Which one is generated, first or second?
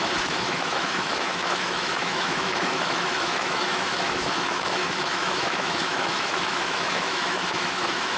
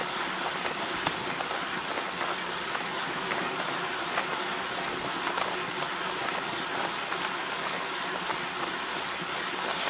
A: first